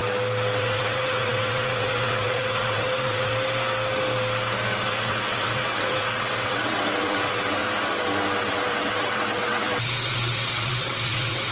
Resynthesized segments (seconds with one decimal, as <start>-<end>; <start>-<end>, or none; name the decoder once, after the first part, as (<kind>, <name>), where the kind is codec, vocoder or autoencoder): 0.6-3.3 (vocoder, WaveNeXt); 4.9-7.6; 8.5-11.5